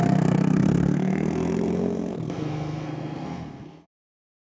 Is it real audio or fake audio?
fake